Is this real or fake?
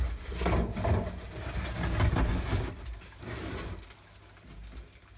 real